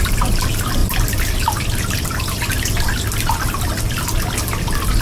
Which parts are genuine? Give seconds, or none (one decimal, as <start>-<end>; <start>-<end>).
0.0-5.0